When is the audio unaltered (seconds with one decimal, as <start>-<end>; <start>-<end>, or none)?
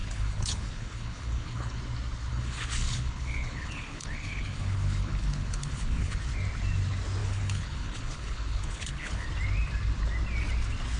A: 1.8-2.3; 6.2-7.2; 9.3-11.0